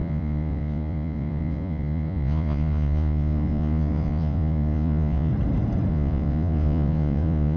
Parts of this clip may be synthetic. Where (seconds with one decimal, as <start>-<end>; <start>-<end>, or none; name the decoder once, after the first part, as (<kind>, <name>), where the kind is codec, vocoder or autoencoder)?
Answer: 0.0-5.3 (vocoder, Vocos); 5.9-7.6